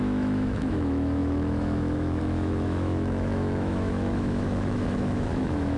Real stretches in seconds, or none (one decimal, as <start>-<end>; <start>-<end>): none